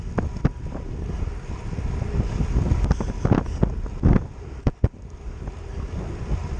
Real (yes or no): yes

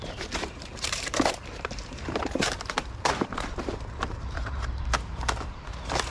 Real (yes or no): no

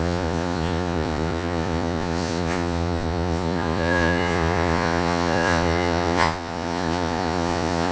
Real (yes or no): no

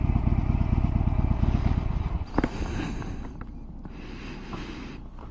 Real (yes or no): yes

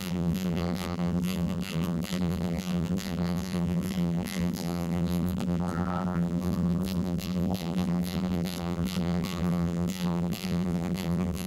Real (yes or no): no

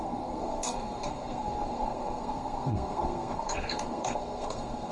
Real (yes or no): no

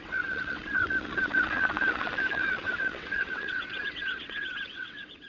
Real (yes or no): no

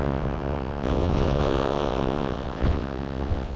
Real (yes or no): no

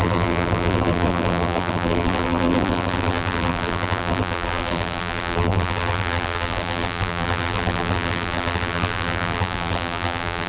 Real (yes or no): no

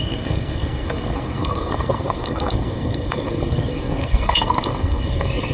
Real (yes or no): no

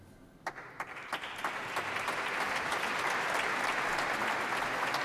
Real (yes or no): yes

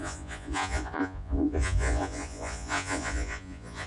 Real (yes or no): no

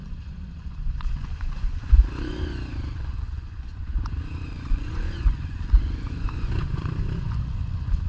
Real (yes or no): no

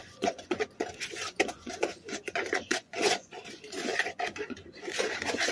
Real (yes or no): no